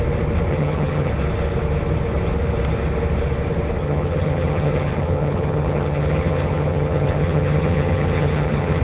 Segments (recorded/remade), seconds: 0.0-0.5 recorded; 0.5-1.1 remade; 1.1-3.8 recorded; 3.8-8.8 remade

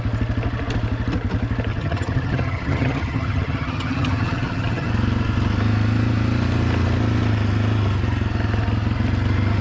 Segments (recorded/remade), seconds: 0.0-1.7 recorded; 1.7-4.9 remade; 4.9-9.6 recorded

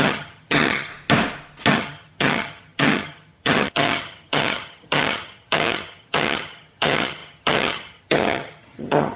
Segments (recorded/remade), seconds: 0.0-0.9 remade; 0.9-1.7 recorded; 1.7-9.2 remade